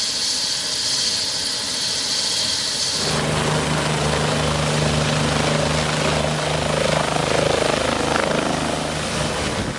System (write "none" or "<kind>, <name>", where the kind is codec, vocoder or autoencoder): none